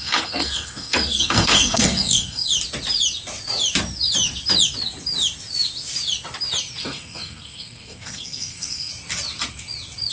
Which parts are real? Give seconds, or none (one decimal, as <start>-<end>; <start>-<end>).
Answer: 2.5-6.8; 8.9-10.1